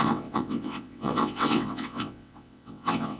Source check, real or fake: fake